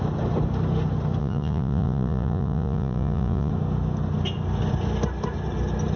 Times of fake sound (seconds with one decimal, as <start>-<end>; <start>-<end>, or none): 1.2-3.5